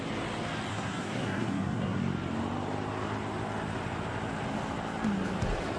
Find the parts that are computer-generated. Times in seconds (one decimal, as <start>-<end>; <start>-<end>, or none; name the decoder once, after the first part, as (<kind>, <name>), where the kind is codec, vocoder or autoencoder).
0.7-2.0 (codec, SNAC)